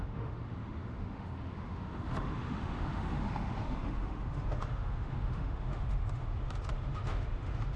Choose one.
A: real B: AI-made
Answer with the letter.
B